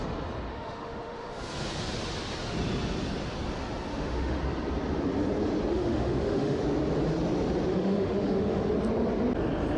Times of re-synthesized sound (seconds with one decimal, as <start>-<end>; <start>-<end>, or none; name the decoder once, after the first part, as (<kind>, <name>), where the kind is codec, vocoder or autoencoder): 0.5-1.4 (autoencoder, DAC-VAE); 3.9-4.4; 5.7-6.6; 7.7-8.7